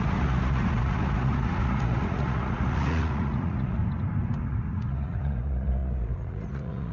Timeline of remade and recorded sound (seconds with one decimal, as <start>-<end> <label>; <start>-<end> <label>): 0.0-3.8 remade; 3.8-4.4 recorded; 4.4-6.9 remade